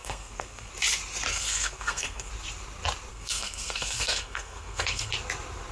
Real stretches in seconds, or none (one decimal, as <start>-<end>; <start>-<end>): 0.7-1.3; 2.3-3.1; 5.1-5.7